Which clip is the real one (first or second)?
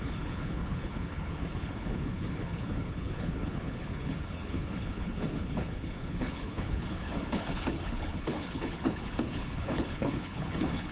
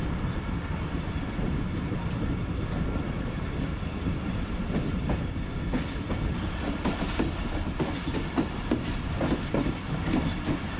second